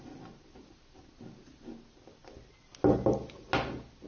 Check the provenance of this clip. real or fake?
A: real